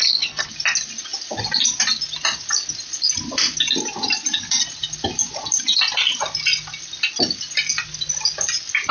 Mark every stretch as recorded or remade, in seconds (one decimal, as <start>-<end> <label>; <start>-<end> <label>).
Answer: 0.0-0.5 remade; 0.5-8.9 recorded